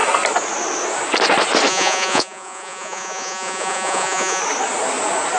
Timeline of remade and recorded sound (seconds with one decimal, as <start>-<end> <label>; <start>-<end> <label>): 0.0-1.7 recorded; 1.7-4.4 remade; 4.4-5.4 recorded